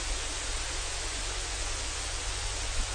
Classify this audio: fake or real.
fake